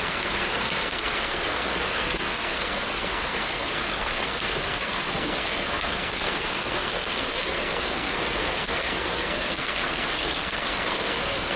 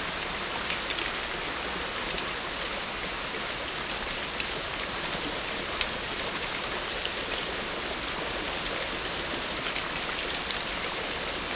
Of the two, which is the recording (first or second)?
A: second